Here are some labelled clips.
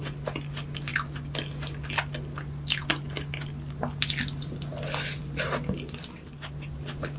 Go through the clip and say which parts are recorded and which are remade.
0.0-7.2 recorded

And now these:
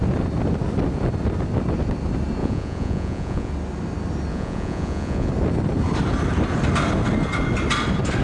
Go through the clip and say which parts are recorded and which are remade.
0.0-2.4 recorded; 2.4-3.5 remade; 3.5-4.3 recorded; 4.3-5.3 remade; 5.3-8.2 recorded

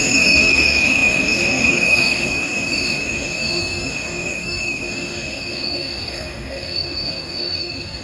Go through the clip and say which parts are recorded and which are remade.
0.0-8.0 remade